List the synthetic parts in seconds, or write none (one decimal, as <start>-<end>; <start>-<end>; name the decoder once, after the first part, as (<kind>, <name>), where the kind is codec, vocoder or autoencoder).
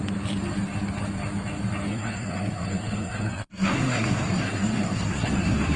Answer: 1.9-5.8 (codec, SNAC)